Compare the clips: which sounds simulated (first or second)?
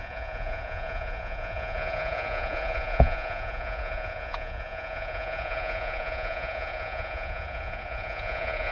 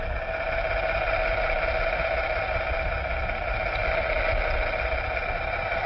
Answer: first